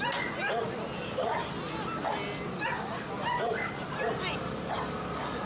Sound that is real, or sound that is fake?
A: real